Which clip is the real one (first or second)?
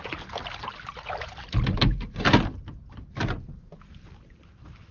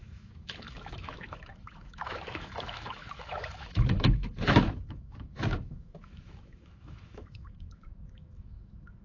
first